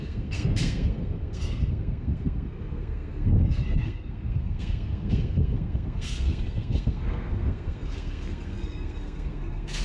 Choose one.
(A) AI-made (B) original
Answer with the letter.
A